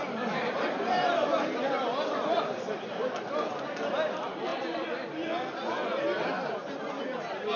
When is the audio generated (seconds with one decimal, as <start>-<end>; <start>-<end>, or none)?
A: none